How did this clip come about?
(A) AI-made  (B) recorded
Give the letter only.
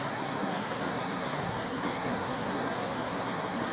A